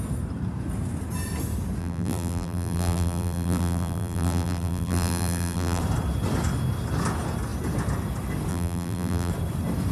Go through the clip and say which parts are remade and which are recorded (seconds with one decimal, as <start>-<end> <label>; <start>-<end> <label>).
0.0-1.8 recorded; 1.8-5.8 remade; 5.8-8.5 recorded; 8.5-9.3 remade; 9.3-9.9 recorded